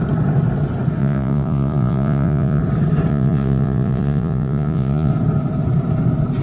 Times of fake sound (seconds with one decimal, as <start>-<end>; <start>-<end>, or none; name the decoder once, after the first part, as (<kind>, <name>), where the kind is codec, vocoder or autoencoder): 1.0-2.6 (vocoder, Vocos); 3.1-5.1